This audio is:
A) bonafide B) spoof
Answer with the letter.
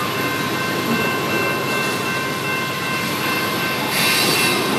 A